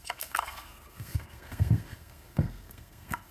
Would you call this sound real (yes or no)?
no